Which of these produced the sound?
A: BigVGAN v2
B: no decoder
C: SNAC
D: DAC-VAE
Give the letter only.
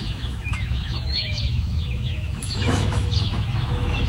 D